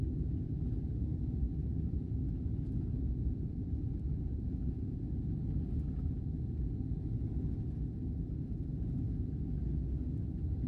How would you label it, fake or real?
real